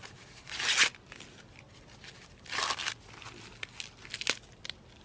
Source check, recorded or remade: recorded